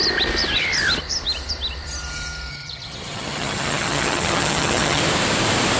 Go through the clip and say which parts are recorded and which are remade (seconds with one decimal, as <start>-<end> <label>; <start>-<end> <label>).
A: 0.0-2.5 recorded; 2.5-5.0 remade; 5.0-5.8 recorded